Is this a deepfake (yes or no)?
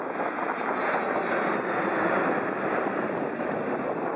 no